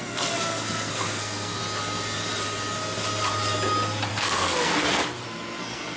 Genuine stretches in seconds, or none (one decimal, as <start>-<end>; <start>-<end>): 1.6-4.1; 5.0-5.6

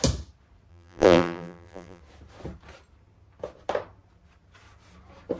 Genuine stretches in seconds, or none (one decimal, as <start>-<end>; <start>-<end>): 0.0-0.7; 2.0-5.4

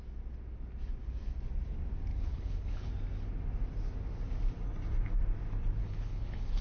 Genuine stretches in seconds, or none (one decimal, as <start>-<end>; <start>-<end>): 0.0-2.1; 2.9-5.8

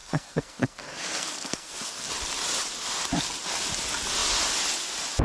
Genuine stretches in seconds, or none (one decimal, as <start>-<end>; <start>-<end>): 2.1-5.2

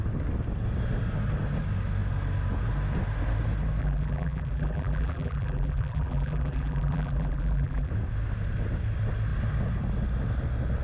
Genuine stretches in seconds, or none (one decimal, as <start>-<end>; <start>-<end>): 0.0-3.8; 7.9-10.8

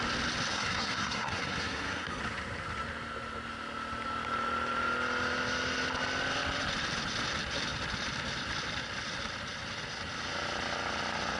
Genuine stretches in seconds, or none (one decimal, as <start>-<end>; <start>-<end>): 0.0-0.5; 2.2-11.4